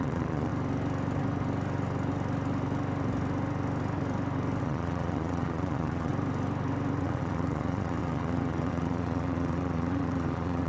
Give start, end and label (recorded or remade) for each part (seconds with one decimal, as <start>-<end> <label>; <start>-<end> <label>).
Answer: 0.0-0.5 remade; 0.5-4.6 recorded; 4.6-6.1 remade; 6.1-7.0 recorded; 7.0-10.7 remade